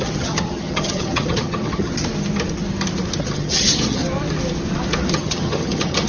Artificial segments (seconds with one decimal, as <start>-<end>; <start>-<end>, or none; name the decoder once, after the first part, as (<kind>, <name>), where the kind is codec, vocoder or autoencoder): 0.0-1.9 (vocoder, HiFi-GAN); 3.2-4.0; 5.1-6.1